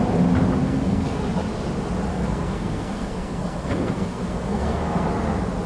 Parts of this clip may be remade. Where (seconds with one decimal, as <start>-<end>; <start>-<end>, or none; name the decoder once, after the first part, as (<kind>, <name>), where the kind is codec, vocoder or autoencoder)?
0.6-1.2 (codec, SNAC); 2.1-5.1